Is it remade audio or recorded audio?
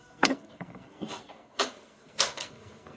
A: remade